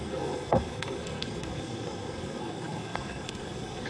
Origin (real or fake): fake